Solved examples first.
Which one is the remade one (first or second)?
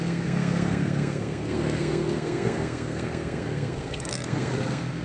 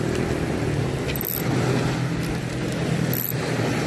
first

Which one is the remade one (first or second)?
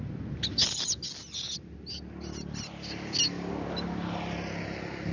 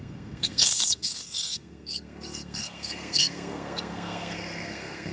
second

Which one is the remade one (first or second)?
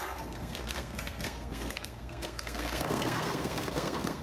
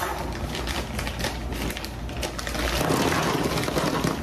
first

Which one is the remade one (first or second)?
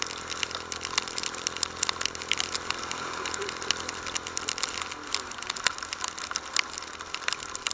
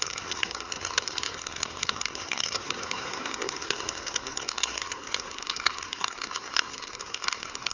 second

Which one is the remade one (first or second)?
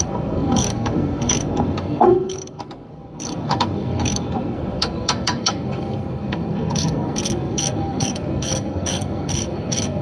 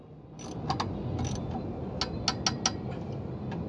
first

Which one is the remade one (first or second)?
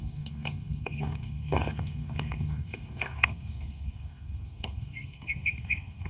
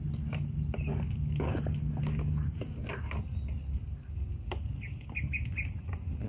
first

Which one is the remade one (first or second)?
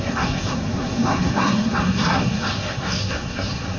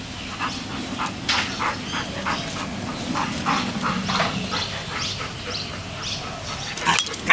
first